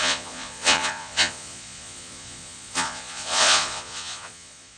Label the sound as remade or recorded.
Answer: remade